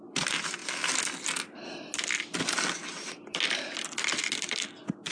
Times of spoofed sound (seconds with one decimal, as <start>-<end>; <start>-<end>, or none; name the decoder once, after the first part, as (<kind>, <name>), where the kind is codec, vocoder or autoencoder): none